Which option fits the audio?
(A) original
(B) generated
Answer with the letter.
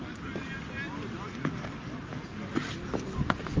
A